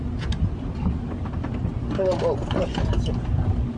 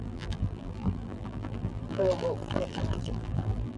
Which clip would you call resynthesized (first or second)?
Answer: second